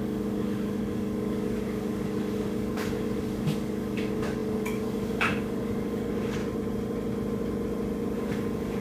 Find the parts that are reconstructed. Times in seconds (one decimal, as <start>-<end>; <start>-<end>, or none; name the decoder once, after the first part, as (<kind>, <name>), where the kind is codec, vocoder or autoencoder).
0.0-6.4 (codec, DAC); 8.2-8.8